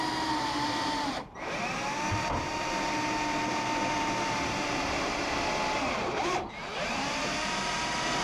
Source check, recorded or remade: remade